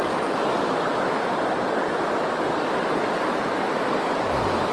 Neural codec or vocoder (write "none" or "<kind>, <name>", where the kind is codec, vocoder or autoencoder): none